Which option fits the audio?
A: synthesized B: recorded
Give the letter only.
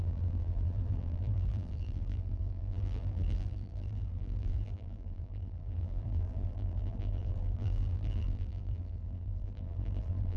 A